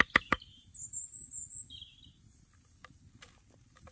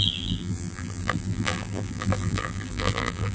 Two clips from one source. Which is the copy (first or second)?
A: second